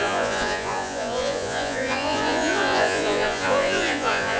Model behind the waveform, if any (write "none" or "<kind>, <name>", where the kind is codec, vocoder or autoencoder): vocoder, Vocos